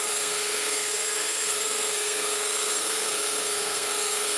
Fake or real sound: fake